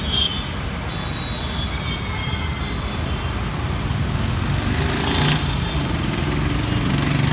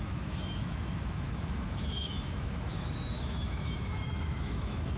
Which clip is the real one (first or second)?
first